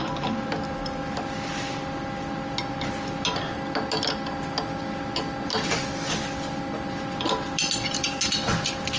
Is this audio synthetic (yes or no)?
no